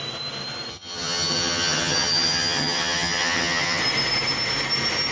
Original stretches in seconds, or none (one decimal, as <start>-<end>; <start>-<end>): 0.0-0.7; 3.8-5.1